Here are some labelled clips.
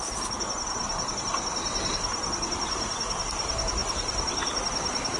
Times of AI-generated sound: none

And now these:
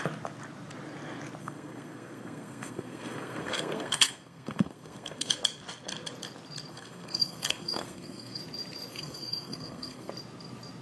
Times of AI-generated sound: 1.4-5.3 (codec, SNAC); 6.7-8.4; 8.9-10.1

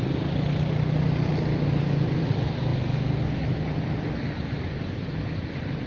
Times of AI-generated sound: none

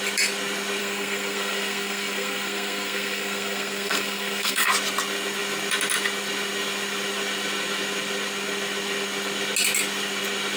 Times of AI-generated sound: 0.8-4.7 (codec, SNAC)

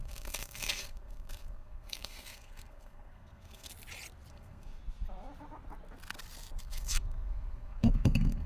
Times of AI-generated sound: 0.0-3.7 (codec, SNAC); 4.3-4.8; 6.6-8.5

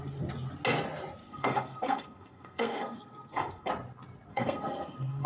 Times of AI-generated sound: 1.2-3.7 (codec, SNAC); 4.3-5.3